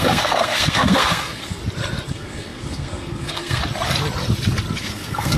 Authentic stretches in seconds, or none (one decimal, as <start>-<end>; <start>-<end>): 1.6-2.1; 3.6-4.8